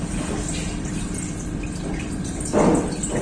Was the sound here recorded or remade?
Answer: recorded